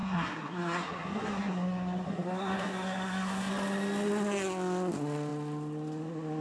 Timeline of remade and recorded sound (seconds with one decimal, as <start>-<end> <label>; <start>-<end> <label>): 0.0-3.5 remade; 3.5-6.4 recorded